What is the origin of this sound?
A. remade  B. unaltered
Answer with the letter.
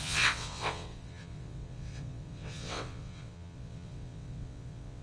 A